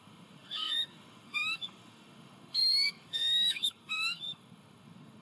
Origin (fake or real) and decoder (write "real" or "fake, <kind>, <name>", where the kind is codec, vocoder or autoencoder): fake, autoencoder, DAC-VAE